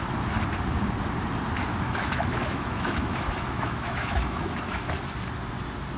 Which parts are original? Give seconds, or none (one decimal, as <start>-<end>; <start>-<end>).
0.0-1.7; 4.9-6.0